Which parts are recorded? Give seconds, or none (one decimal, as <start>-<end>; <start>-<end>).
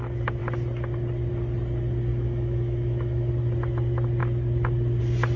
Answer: 0.0-2.1; 3.3-5.4